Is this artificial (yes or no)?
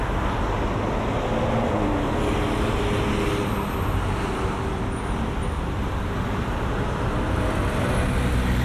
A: no